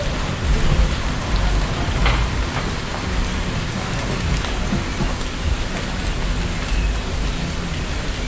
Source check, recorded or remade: recorded